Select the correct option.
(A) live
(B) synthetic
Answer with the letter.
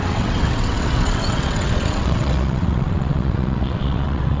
B